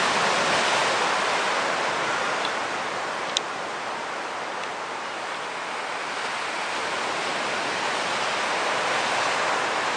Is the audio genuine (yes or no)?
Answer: yes